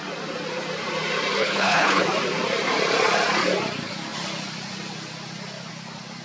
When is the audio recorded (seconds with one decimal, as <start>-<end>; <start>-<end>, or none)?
0.0-1.4; 2.0-6.2